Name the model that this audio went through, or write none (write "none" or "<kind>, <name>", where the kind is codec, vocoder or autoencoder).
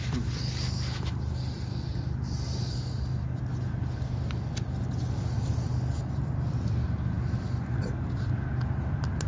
none